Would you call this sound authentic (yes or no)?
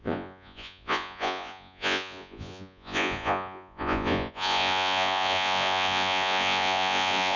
no